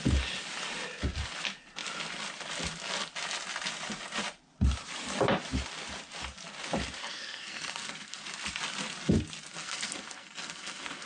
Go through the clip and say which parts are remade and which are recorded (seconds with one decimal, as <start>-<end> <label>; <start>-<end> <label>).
0.0-7.0 recorded; 7.0-8.2 remade; 8.2-9.5 recorded; 9.5-11.1 remade